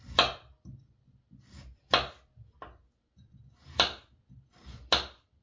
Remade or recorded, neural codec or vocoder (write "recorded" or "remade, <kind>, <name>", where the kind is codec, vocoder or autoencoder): recorded